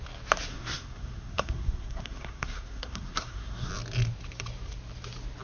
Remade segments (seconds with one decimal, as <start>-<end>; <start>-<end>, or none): 0.5-3.7